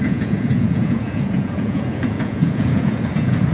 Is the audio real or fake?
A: fake